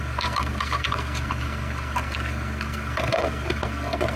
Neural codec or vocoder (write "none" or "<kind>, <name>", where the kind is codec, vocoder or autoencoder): codec, SNAC